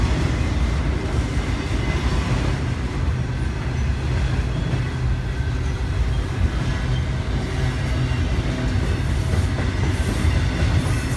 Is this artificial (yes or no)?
no